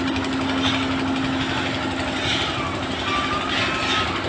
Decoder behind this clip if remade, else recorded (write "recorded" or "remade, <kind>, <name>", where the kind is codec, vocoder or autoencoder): recorded